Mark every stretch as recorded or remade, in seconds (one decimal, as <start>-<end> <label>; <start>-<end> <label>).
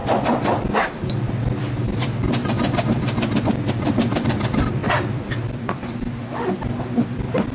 0.0-7.5 remade